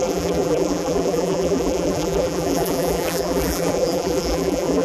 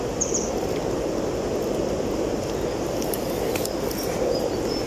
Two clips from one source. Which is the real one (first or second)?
second